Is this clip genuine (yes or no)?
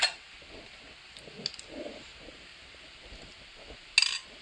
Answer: yes